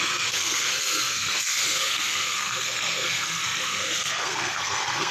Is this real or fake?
fake